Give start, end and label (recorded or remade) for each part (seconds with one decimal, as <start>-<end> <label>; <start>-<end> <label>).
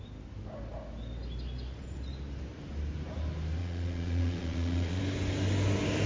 0.0-3.6 recorded; 3.6-5.0 remade; 5.0-6.1 recorded